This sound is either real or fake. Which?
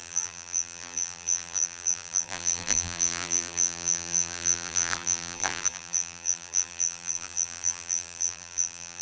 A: fake